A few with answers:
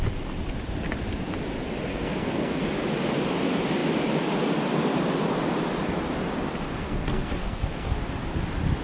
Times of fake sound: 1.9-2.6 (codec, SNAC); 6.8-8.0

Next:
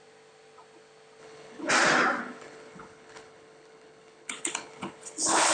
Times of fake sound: 1.2-1.7 (codec, HILCodec); 2.2-5.5

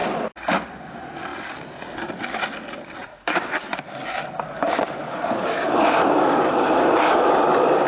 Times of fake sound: 3.1-7.3 (codec, DAC)